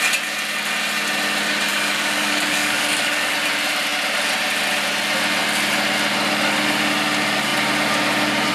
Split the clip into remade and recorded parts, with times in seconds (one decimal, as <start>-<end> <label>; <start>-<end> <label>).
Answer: 0.0-1.7 recorded; 1.7-3.3 remade; 3.3-8.5 recorded